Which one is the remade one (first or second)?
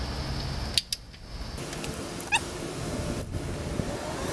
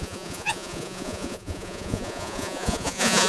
second